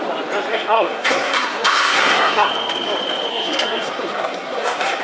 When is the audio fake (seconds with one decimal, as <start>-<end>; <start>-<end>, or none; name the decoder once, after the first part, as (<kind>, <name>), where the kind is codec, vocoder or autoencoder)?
0.5-2.5 (codec, SNAC); 3.3-5.0